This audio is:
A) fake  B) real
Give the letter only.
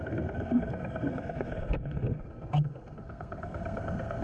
A